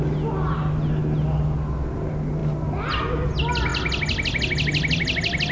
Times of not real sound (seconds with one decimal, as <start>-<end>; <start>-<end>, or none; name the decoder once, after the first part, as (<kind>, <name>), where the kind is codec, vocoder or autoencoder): none